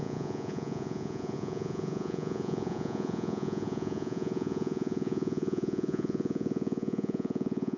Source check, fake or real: fake